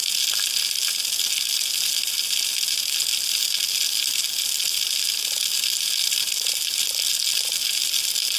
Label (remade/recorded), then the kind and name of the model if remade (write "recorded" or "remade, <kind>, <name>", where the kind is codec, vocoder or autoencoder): recorded